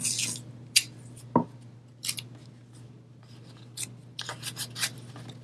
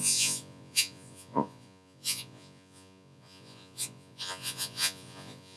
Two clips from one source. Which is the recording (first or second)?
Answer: first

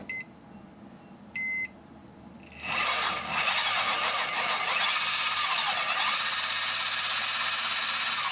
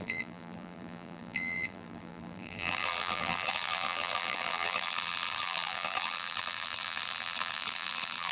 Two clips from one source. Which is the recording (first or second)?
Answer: first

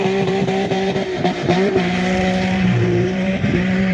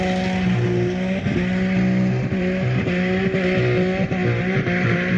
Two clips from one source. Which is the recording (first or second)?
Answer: second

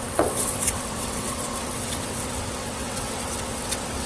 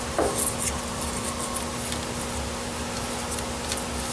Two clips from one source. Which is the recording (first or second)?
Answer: second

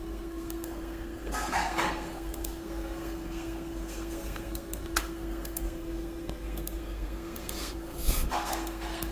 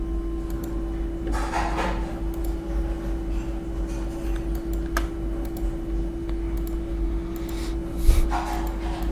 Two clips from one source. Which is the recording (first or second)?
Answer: second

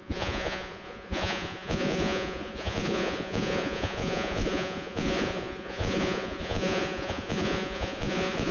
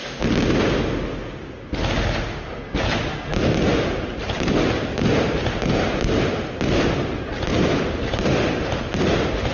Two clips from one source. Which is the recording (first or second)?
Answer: second